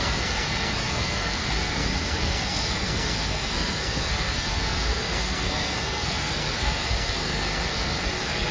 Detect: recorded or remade remade